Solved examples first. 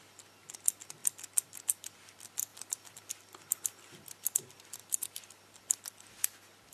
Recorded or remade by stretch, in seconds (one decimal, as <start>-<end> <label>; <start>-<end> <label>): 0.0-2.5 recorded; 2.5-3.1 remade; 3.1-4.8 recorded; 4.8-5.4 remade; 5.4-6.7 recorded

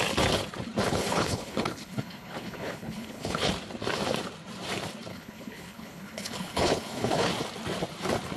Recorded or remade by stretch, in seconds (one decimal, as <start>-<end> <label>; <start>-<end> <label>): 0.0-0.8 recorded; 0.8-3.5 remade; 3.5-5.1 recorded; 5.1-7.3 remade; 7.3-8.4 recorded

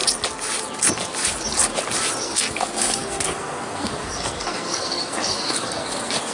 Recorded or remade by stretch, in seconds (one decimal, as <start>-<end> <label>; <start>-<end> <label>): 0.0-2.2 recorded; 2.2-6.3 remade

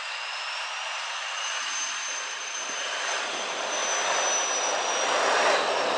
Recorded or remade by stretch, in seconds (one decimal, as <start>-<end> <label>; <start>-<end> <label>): 0.0-6.0 recorded

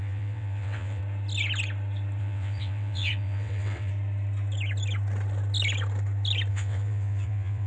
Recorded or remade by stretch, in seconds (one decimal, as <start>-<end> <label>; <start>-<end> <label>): 0.0-1.0 remade; 1.0-2.2 recorded; 2.2-3.9 remade; 3.9-6.5 recorded; 6.5-7.7 remade

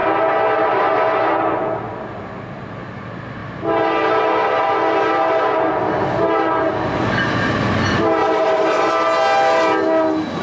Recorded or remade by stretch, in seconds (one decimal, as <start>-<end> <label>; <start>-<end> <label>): 0.0-8.2 recorded; 8.2-8.9 remade; 8.9-10.4 recorded

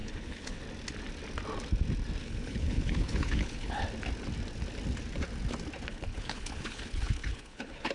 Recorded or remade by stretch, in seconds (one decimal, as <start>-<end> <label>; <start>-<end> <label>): 0.0-0.6 remade; 0.6-2.2 recorded; 2.2-3.8 remade; 3.8-5.9 recorded; 5.9-7.9 remade

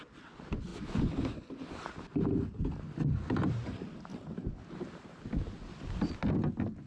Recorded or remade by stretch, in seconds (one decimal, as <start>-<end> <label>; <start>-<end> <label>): 0.0-6.9 recorded